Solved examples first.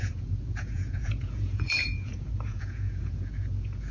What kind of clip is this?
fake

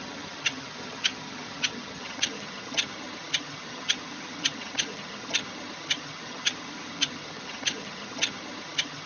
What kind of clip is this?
fake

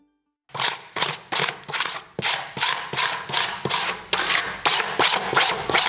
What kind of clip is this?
real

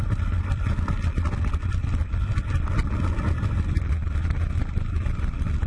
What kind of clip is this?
real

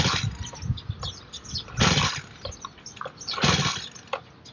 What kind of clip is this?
real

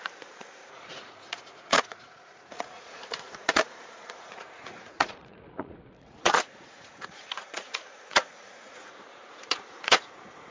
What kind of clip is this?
fake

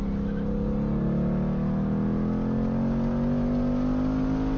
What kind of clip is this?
real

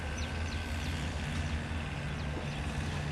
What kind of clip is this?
real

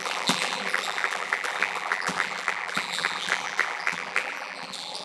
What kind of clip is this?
fake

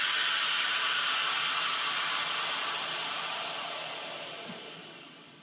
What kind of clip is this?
real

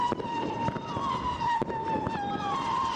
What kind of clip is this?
fake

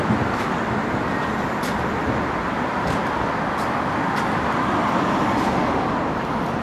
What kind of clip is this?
real